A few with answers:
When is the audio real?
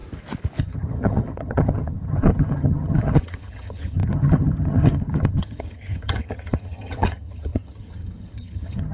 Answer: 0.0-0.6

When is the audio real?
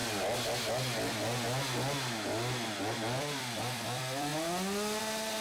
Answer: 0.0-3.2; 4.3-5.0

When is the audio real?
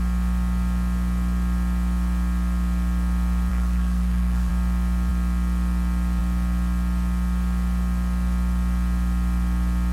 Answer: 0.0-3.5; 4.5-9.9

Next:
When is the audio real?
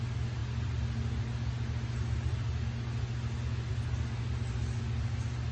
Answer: 0.0-5.5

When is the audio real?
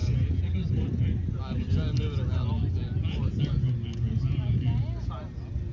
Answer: 0.0-5.7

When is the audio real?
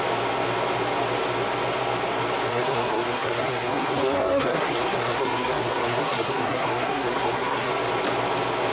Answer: 0.0-2.5; 7.7-8.7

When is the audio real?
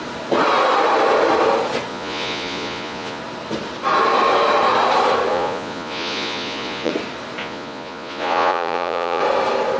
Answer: 0.0-1.9; 3.2-5.3; 6.9-7.4; 9.2-9.8